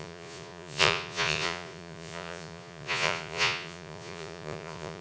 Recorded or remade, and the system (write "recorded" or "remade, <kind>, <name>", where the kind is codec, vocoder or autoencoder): remade, vocoder, Vocos